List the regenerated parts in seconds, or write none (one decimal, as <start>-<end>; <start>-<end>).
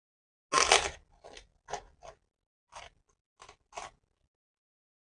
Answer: none